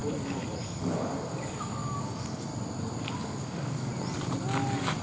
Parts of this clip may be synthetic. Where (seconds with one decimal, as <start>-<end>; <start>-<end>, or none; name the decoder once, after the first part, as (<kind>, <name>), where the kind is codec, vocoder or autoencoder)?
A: 0.6-2.5 (codec, DAC); 3.2-3.9